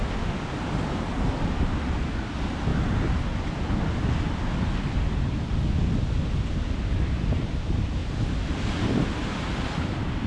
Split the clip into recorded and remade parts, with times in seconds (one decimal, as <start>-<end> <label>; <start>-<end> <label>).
0.0-0.6 recorded; 0.6-10.3 remade